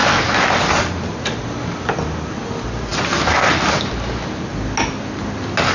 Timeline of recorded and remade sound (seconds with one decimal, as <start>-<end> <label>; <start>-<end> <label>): 0.0-5.7 recorded